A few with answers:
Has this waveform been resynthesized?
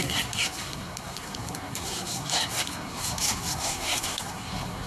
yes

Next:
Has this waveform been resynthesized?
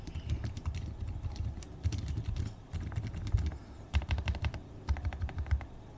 no